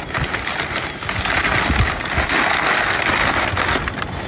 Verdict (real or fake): real